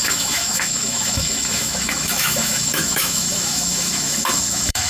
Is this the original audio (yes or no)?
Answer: no